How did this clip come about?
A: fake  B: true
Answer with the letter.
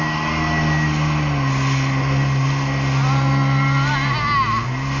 B